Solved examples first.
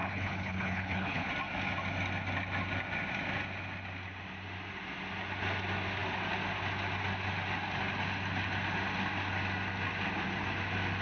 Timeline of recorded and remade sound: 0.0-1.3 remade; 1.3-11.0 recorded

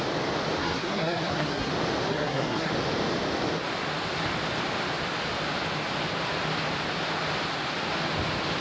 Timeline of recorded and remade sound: 0.0-0.6 recorded; 0.6-1.7 remade; 1.7-2.1 recorded; 2.1-2.7 remade; 2.7-8.6 recorded

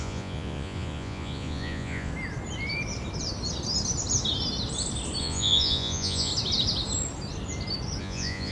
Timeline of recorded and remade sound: 0.0-2.1 remade; 2.1-5.2 recorded; 5.2-6.3 remade; 6.3-8.0 recorded; 8.0-8.5 remade